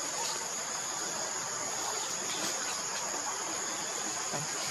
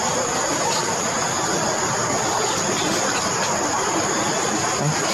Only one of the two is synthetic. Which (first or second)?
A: first